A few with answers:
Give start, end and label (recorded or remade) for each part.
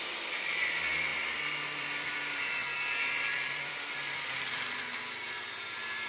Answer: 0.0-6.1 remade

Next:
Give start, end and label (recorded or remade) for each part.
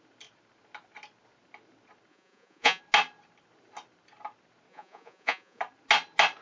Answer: 0.0-2.1 recorded; 2.1-2.8 remade; 2.8-4.7 recorded; 4.7-5.6 remade; 5.6-6.4 recorded